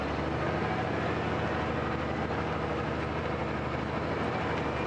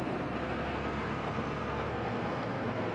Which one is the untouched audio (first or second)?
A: first